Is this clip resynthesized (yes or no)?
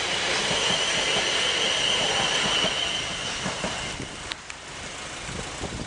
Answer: no